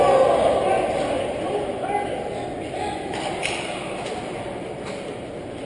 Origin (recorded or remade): recorded